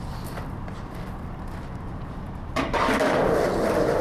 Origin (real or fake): real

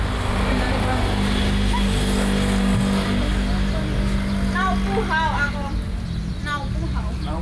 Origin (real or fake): real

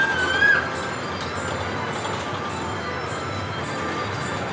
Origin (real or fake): real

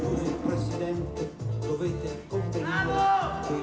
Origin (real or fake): real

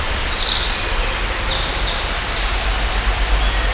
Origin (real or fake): real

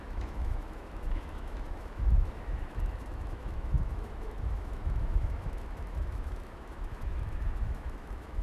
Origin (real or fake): fake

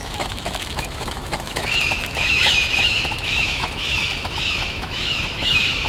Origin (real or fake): fake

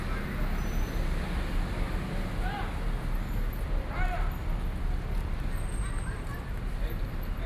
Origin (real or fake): real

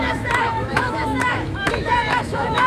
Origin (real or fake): fake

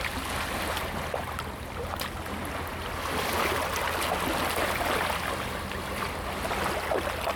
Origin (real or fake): real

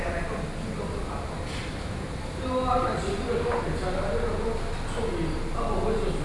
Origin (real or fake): real